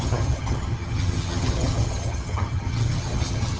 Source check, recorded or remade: remade